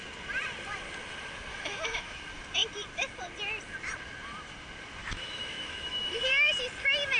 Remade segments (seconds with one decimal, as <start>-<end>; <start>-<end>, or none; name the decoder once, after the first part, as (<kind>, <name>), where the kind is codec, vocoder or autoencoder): 1.5-2.2 (autoencoder, DAC-VAE); 5.0-6.2